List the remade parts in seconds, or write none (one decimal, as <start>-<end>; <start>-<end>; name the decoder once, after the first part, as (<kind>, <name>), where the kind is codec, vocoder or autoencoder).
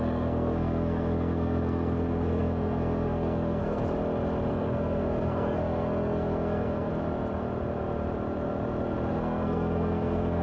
0.0-3.8 (codec, SNAC); 4.5-6.9; 9.1-10.4